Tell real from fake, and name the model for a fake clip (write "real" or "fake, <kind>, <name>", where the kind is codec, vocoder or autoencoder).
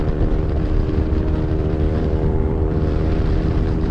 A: fake, vocoder, BigVGAN v2